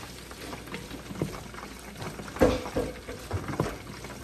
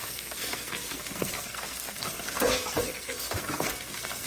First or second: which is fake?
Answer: second